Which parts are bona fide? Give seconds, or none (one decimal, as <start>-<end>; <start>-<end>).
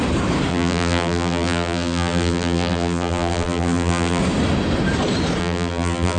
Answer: 0.0-0.5; 4.2-5.4